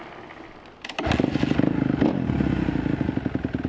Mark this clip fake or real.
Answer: real